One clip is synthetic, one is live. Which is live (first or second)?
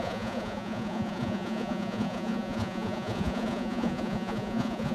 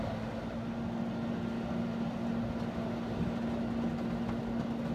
second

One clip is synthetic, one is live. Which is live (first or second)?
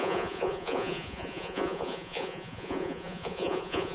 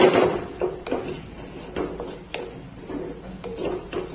second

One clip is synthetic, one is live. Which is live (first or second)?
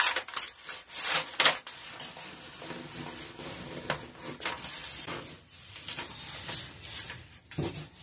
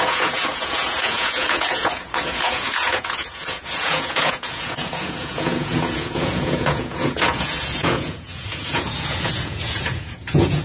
first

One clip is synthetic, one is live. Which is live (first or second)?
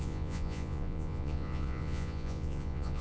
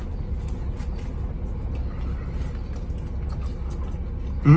second